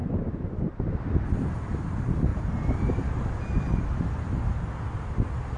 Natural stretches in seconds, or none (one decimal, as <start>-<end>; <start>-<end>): 1.1-2.3; 2.9-5.6